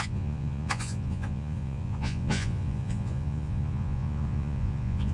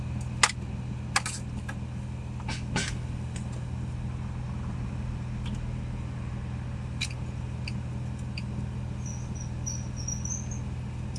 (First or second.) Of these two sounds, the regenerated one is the first